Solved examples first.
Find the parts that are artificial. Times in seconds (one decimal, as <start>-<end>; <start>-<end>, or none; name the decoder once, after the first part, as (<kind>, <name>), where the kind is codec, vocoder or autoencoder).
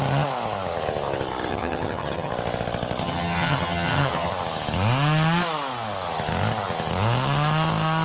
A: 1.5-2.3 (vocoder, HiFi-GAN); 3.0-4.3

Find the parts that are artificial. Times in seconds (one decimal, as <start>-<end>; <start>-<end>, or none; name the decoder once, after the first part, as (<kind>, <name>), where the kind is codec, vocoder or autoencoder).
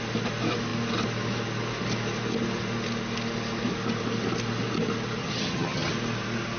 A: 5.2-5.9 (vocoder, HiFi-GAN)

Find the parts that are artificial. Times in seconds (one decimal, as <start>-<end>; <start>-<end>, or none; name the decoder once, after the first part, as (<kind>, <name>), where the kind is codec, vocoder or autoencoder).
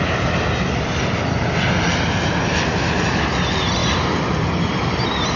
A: none